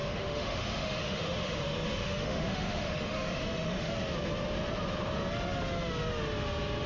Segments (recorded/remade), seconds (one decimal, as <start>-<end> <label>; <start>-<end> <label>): 0.0-3.9 remade; 3.9-6.9 recorded